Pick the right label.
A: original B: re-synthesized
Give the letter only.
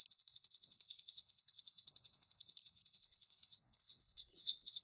B